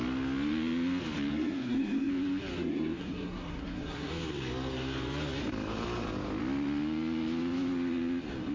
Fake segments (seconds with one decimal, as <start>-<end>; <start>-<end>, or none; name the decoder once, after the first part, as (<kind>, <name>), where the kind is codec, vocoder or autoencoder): 1.3-2.1 (codec, SNAC); 2.6-4.1